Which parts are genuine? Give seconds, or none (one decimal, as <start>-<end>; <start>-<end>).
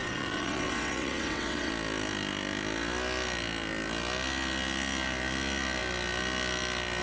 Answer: 1.7-7.0